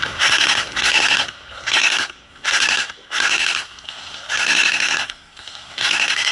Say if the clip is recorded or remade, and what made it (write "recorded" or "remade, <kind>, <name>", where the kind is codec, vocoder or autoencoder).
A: remade, codec, SNAC